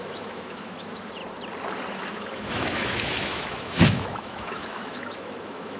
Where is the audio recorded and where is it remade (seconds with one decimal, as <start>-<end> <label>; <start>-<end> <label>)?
0.0-1.2 remade; 1.2-1.9 recorded; 1.9-5.8 remade